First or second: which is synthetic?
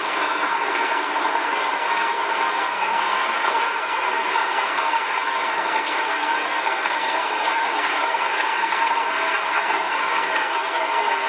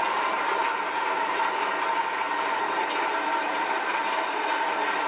first